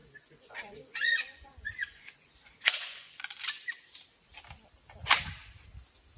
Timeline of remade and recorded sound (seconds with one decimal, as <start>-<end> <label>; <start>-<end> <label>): 0.0-3.4 remade; 3.4-6.2 recorded